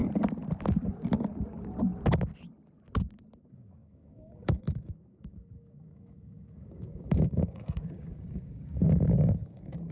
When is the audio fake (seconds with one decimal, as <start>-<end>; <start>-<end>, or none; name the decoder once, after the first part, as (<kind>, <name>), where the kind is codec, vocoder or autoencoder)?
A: 3.4-9.9 (codec, DAC)